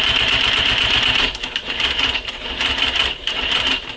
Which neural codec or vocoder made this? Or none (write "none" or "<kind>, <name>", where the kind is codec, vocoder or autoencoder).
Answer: vocoder, BigVGAN v2